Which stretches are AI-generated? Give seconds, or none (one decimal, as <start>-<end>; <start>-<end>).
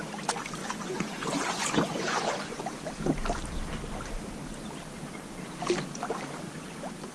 0.6-2.6